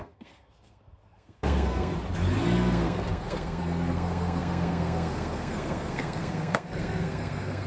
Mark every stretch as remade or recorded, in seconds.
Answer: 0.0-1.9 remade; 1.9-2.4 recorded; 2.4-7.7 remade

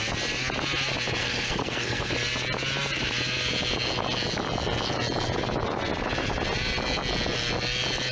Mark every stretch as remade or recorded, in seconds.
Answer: 0.0-1.2 recorded; 1.2-2.1 remade; 2.1-8.1 recorded

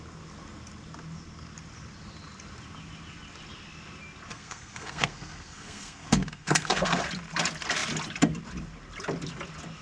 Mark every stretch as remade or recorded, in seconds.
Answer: 0.0-4.3 recorded; 4.3-7.0 remade; 7.0-9.8 recorded

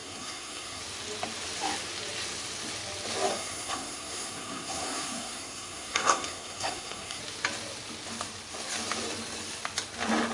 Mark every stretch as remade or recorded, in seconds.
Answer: 0.0-0.8 remade; 0.8-3.3 recorded; 3.3-7.2 remade; 7.2-10.3 recorded

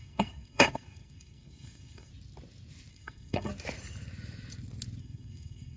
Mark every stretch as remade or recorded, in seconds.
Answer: 0.0-2.1 remade; 2.1-2.9 recorded; 2.9-3.5 remade; 3.5-5.0 recorded; 5.0-5.8 remade

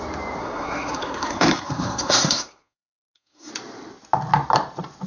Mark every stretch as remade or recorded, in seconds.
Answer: 0.0-0.4 recorded; 0.4-3.5 remade; 3.5-5.1 recorded